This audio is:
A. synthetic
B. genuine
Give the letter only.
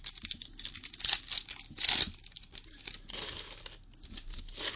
B